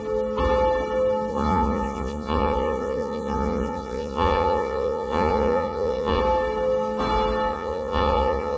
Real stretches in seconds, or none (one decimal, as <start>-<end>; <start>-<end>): 0.0-1.3; 6.2-7.5